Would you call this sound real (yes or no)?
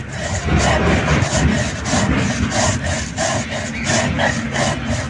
yes